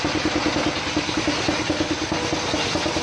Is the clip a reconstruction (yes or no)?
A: no